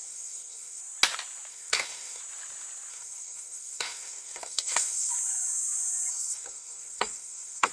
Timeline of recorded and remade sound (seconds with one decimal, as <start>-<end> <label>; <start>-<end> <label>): 0.0-0.8 remade; 0.8-1.5 recorded; 1.5-2.2 remade; 2.2-2.9 recorded; 2.9-5.1 remade; 5.1-6.1 recorded; 6.1-7.7 remade